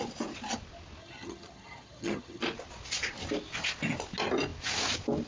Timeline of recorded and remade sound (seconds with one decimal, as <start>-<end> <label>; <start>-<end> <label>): 0.0-1.0 recorded; 1.0-2.4 remade; 2.4-5.3 recorded